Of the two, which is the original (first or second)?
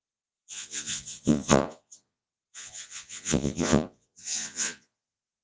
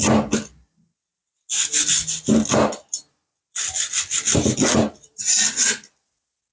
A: second